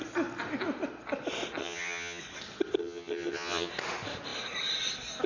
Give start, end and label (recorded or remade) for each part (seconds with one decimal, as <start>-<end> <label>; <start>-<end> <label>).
0.0-1.6 recorded; 1.6-2.2 remade; 2.2-2.8 recorded; 2.8-3.7 remade; 3.7-5.3 recorded